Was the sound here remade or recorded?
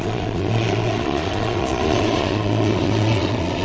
remade